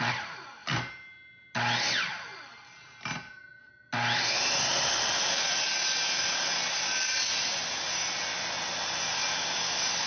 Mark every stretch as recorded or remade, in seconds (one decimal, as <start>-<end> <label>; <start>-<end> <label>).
0.0-10.1 recorded